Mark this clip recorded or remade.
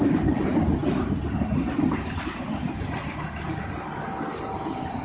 recorded